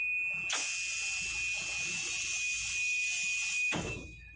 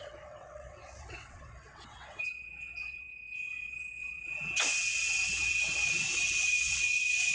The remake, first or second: second